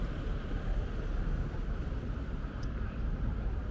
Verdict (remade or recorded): remade